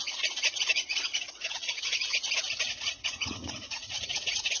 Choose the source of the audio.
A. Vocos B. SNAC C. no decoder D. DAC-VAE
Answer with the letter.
A